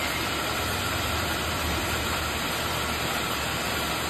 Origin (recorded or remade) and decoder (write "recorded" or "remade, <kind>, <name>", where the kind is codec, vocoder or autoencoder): remade, vocoder, BigVGAN v2